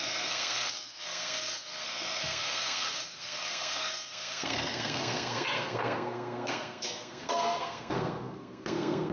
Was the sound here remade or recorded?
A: remade